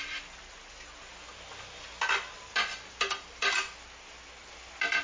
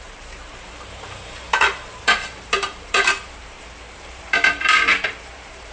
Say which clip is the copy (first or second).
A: second